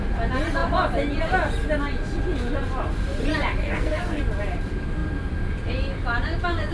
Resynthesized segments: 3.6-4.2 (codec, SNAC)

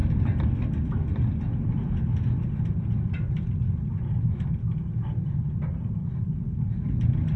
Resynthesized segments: none

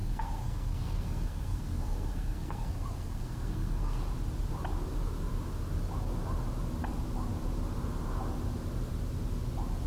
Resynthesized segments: 0.0-4.0 (codec, SNAC)

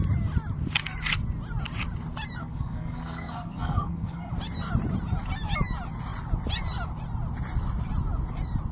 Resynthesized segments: 2.4-4.3 (codec, SNAC)

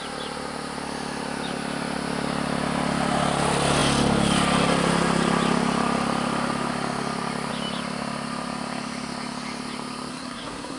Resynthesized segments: 10.1-10.8 (codec, SNAC)

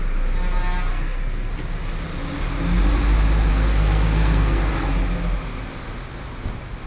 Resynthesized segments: 0.9-1.5 (codec, SNAC); 3.5-4.7

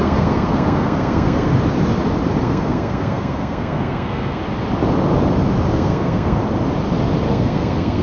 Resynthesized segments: 0.0-1.5 (codec, SNAC); 2.4-4.4; 5.7-6.4; 7.3-8.0

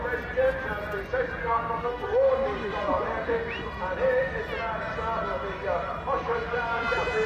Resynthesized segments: 1.4-2.3 (codec, SNAC)